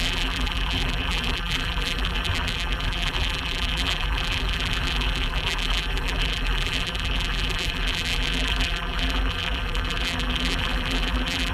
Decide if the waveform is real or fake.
fake